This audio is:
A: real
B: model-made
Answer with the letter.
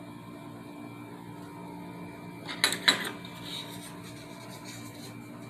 A